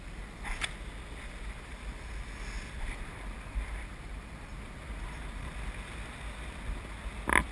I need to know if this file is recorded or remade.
recorded